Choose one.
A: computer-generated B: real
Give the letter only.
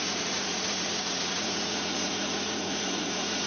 A